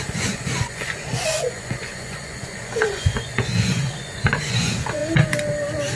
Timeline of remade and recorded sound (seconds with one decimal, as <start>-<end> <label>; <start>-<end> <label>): 0.0-5.0 remade; 5.0-6.0 recorded